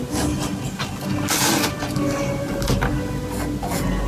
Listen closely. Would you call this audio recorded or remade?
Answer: recorded